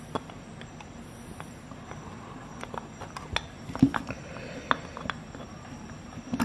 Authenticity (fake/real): real